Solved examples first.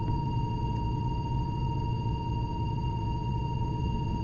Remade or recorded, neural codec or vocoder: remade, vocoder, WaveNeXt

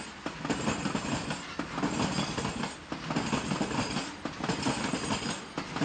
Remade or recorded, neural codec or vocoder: recorded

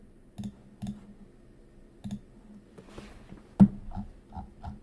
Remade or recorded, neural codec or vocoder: recorded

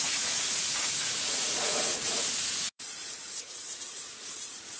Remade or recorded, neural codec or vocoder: remade, vocoder, Vocos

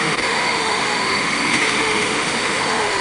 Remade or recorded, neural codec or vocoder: remade, autoencoder, DAC-VAE